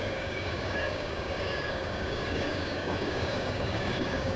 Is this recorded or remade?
remade